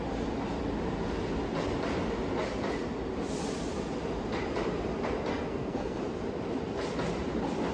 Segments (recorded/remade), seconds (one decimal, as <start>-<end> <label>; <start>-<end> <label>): 0.0-5.3 recorded; 5.3-6.0 remade; 6.0-7.7 recorded